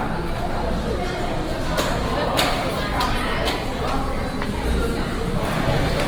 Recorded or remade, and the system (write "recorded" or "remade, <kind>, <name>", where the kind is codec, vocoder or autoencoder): recorded